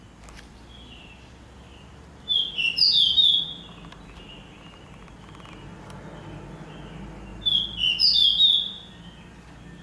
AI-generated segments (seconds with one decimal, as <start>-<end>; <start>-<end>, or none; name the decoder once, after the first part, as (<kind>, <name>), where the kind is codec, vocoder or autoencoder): none